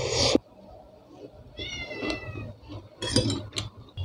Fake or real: real